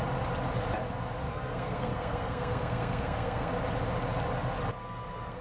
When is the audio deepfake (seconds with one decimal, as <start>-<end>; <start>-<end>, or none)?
1.3-3.5; 4.8-5.4